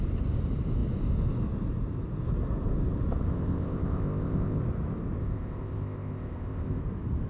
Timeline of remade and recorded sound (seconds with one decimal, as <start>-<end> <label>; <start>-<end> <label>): 0.0-3.3 recorded; 3.3-4.6 remade; 4.6-5.2 recorded; 5.2-6.8 remade; 6.8-7.3 recorded